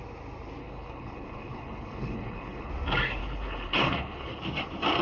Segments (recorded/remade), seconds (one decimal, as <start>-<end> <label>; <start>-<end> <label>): 0.0-0.6 recorded; 0.6-2.7 remade; 2.7-3.2 recorded; 3.2-4.4 remade; 4.4-5.0 recorded